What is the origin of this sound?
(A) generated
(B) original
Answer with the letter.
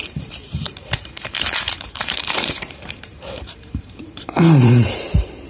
A